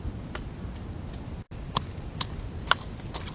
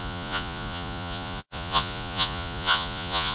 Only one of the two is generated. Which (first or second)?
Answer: second